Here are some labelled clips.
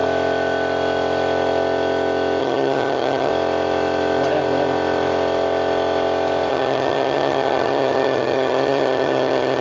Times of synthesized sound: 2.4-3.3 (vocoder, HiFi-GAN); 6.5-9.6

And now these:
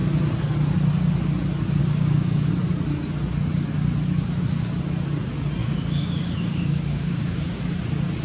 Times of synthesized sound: 1.8-2.5 (codec, DAC); 5.6-7.6

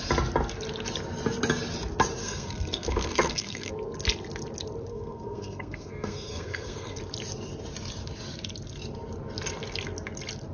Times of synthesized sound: 2.2-3.7 (codec, SNAC); 4.9-7.0

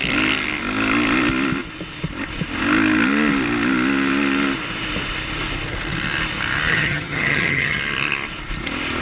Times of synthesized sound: 6.7-7.8 (vocoder, HiFi-GAN)

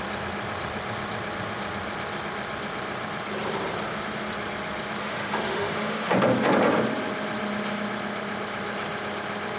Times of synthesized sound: 5.0-6.1 (autoencoder, DAC-VAE)

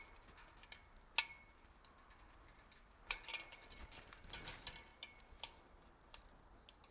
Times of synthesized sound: none

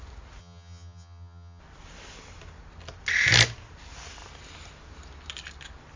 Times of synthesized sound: 0.4-1.6 (vocoder, HiFi-GAN)